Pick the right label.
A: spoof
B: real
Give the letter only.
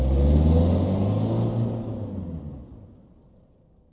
B